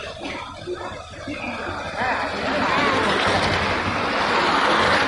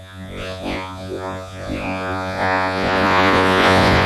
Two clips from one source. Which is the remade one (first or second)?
second